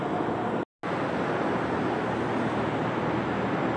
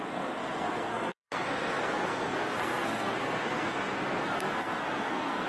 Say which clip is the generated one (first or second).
second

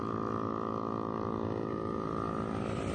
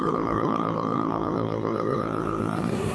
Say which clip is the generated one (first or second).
second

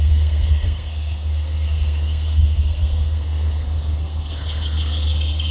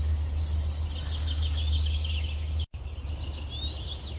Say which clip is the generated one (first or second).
first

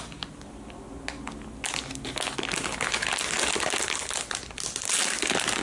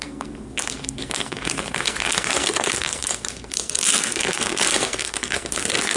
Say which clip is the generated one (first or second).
second